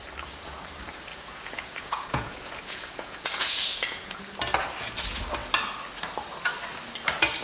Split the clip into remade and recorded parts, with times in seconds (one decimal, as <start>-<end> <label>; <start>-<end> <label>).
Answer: 0.0-1.1 recorded; 1.1-4.2 remade; 4.2-7.4 recorded